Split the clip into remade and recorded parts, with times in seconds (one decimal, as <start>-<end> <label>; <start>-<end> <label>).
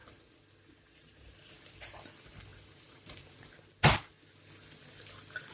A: 0.0-1.3 remade; 1.3-2.5 recorded; 2.5-3.6 remade; 3.6-5.5 recorded